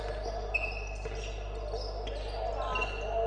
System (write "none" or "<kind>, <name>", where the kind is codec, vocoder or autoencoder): none